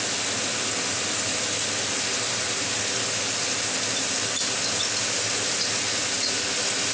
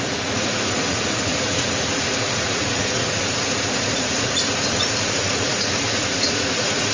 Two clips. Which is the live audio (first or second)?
first